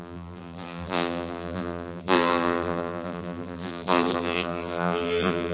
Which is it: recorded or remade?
remade